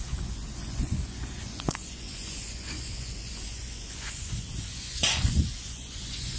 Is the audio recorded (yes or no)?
no